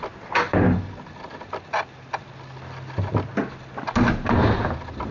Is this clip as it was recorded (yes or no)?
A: yes